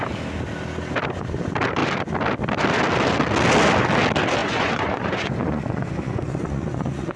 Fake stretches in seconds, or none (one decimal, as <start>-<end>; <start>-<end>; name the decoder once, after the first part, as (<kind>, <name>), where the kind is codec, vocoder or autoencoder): 4.4-7.2 (vocoder, Vocos)